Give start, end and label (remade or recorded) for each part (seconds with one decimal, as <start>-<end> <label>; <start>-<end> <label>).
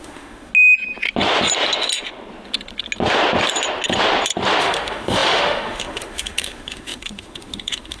0.0-0.5 remade; 0.5-4.6 recorded; 4.6-8.0 remade